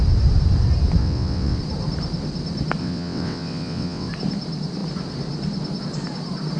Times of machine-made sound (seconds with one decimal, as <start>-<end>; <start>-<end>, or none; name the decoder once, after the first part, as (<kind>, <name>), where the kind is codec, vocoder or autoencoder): 1.0-1.6 (vocoder, WaveNeXt); 2.8-4.1